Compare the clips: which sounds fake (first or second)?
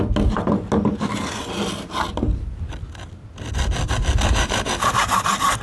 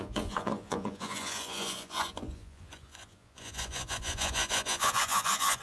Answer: second